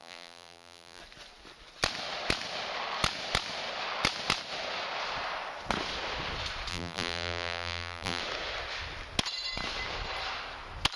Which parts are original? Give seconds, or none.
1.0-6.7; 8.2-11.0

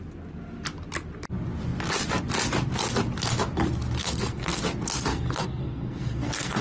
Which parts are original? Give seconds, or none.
0.0-4.0; 4.6-5.1

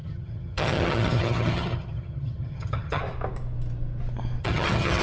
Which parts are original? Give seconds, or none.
3.0-4.4

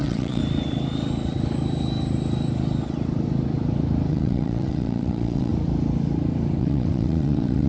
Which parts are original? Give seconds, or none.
0.4-4.1; 5.5-6.6

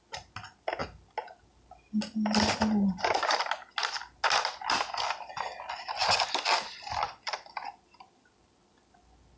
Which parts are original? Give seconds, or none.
0.0-9.4

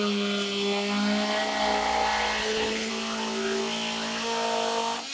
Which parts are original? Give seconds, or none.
0.0-2.4; 2.9-5.1

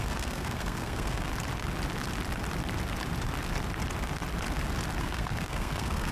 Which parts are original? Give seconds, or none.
1.3-5.0